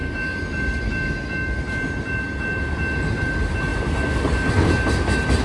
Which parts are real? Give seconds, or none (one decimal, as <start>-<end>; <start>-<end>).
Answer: 0.0-5.4